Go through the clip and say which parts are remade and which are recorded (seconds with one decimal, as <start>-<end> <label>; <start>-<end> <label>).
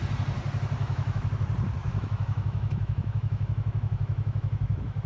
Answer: 0.0-0.8 recorded; 0.8-1.3 remade; 1.3-1.8 recorded; 1.8-5.1 remade